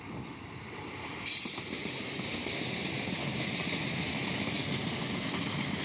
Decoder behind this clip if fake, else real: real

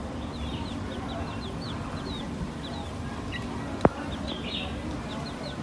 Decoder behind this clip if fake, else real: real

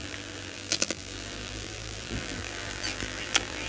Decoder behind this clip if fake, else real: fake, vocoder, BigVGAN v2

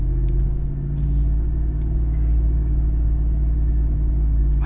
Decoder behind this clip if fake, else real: real